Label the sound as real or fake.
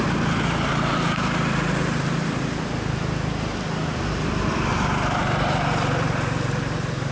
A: real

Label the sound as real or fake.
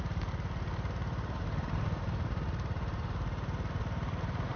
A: fake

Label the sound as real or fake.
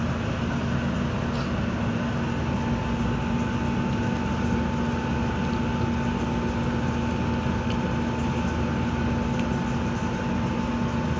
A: real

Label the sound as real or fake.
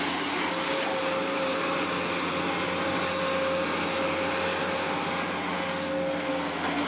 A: real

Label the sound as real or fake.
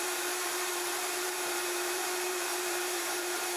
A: fake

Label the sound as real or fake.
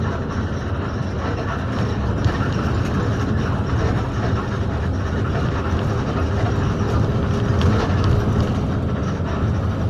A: real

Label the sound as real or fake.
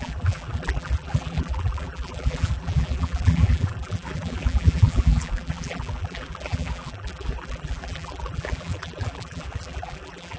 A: fake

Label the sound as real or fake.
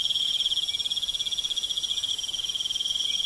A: real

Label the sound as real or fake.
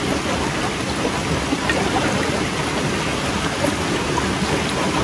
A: real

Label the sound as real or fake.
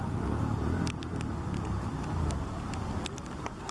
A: real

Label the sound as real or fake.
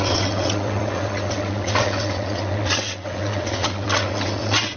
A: fake